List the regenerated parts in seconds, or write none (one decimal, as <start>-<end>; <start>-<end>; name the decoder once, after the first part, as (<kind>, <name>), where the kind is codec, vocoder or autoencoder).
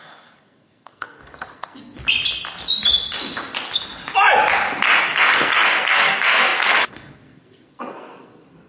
0.0-2.0 (codec, SNAC); 5.0-8.7